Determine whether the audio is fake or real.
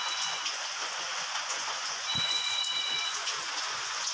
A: fake